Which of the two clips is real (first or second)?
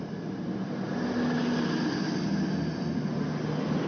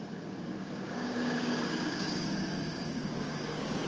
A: first